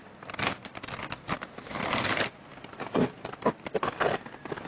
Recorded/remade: recorded